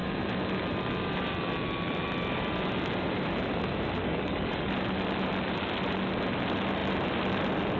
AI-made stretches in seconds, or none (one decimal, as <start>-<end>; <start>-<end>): 4.0-4.7